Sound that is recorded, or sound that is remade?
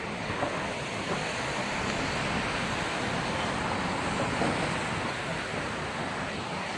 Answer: recorded